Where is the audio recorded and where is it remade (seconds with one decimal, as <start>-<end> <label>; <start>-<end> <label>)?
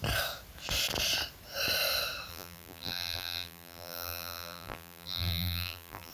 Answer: 0.0-2.3 recorded; 2.3-6.1 remade